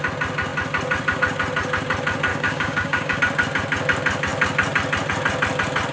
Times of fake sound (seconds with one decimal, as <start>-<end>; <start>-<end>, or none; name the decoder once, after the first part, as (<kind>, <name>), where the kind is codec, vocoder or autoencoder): 2.3-3.2 (codec, DAC)